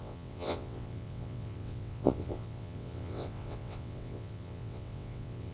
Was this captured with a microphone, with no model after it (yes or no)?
no